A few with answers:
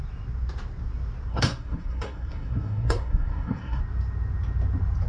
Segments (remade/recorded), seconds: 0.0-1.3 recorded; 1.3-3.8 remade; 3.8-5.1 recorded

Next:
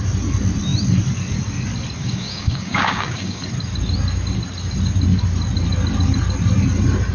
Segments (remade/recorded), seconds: 0.0-2.0 recorded; 2.0-3.4 remade; 3.4-7.1 recorded

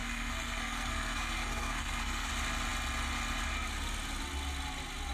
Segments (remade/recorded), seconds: 0.0-2.3 remade; 2.3-5.1 recorded

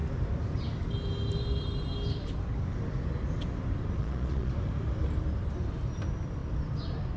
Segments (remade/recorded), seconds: 0.0-4.0 recorded; 4.0-4.5 remade; 4.5-7.2 recorded